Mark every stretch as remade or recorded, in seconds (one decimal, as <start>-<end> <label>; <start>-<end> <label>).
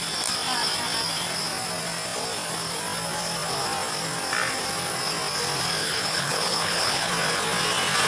0.0-5.8 recorded; 5.8-7.1 remade; 7.1-8.1 recorded